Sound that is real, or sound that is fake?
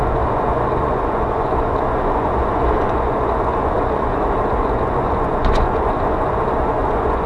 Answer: fake